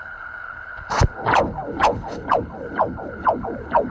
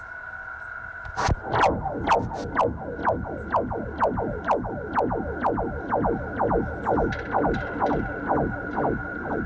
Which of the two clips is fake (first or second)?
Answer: first